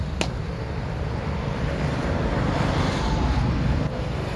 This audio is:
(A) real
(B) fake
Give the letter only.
A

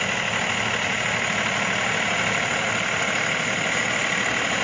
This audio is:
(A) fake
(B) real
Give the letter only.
B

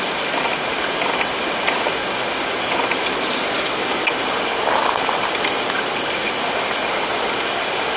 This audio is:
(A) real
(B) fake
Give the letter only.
A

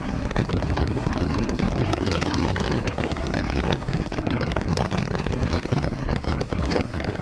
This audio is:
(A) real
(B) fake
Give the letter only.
B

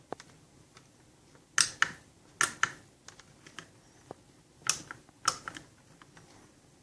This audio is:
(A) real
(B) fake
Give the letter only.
A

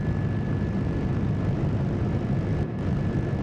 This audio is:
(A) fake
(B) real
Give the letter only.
B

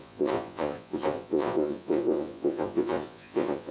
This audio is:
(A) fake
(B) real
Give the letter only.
A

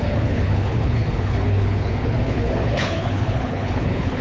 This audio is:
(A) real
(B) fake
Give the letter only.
B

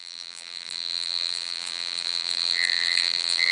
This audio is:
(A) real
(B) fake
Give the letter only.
B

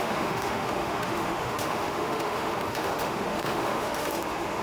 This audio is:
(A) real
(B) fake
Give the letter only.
B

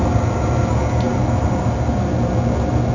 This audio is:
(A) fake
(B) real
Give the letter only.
B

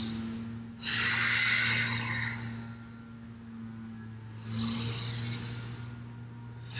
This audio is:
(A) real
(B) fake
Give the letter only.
A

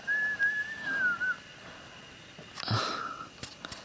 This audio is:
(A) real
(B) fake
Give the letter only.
A